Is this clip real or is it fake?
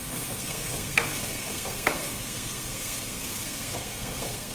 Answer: fake